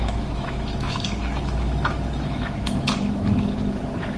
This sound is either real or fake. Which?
fake